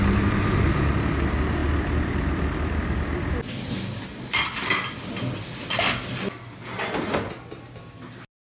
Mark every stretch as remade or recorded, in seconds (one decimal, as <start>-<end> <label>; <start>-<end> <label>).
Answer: 0.0-8.6 recorded